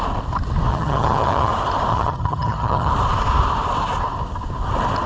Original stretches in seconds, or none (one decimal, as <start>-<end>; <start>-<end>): 0.0-0.7; 1.5-1.9; 2.9-5.1